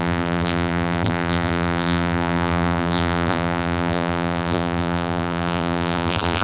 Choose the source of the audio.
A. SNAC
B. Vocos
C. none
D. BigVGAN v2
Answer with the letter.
D